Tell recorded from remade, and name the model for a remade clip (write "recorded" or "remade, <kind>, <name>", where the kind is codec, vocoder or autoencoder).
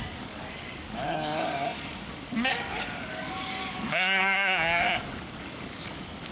remade, codec, DAC